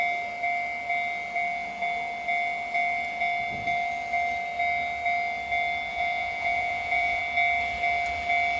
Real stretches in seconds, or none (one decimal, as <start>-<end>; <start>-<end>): 0.0-5.9; 7.2-8.6